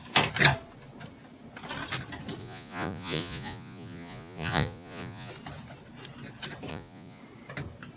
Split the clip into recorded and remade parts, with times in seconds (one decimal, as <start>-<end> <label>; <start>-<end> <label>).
0.0-2.4 recorded; 2.4-5.3 remade; 5.3-6.7 recorded; 6.7-7.2 remade; 7.2-8.0 recorded